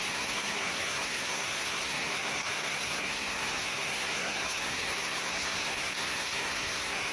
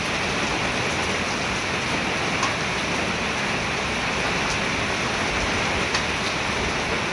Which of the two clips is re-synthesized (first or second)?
first